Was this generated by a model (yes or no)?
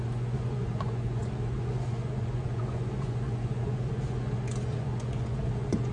yes